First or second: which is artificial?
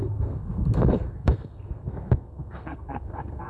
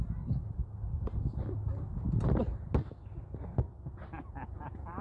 first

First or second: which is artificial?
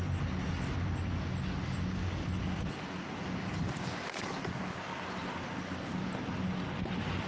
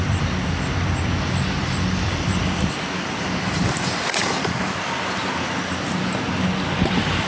second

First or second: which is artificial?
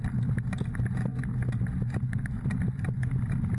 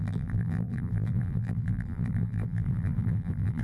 second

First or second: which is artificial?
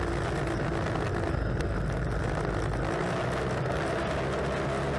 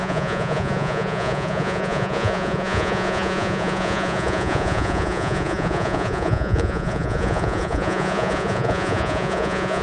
second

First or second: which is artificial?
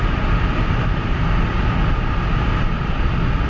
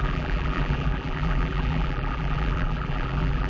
second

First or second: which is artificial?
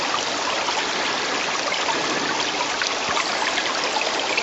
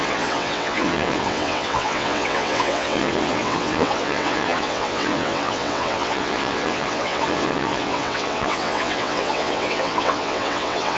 second